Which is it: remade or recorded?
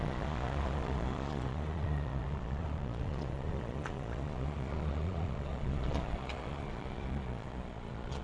remade